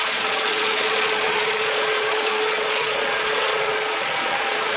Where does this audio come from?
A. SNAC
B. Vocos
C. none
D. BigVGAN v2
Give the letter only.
B